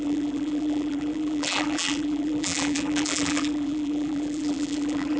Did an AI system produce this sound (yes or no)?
yes